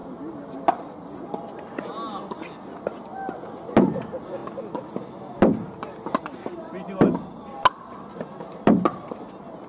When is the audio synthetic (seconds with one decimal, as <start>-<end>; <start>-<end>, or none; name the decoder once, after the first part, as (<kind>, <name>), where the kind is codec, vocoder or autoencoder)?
none